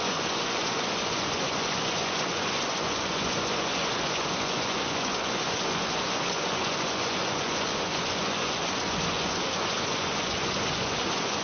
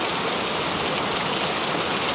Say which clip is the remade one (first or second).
first